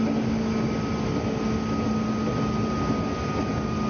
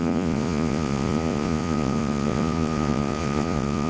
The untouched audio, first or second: first